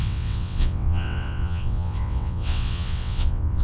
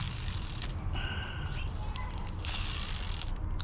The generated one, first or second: first